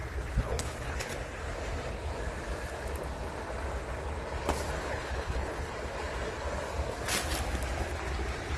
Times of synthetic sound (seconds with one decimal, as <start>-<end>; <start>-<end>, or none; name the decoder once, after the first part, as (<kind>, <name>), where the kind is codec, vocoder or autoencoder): 0.0-1.1 (codec, HILCodec); 4.8-5.7